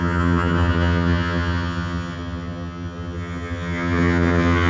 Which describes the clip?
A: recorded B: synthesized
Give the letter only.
B